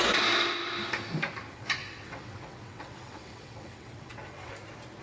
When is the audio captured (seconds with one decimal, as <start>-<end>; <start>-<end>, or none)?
0.0-1.5; 4.5-5.0